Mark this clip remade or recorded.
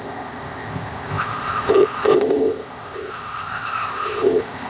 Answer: remade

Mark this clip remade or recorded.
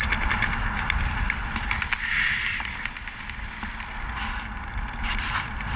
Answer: recorded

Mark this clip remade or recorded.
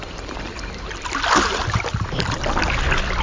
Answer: recorded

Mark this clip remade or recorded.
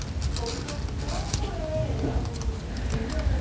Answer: recorded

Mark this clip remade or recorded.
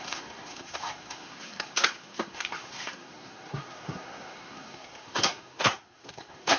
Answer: remade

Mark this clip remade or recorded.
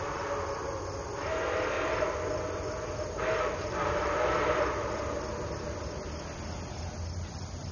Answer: recorded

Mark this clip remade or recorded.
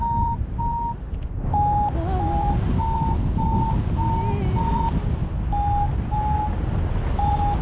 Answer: recorded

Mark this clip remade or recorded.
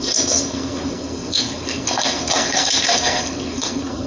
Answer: remade